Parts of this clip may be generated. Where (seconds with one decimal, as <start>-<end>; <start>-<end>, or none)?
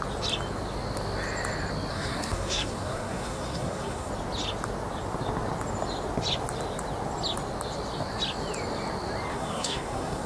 1.9-4.1; 9.3-10.3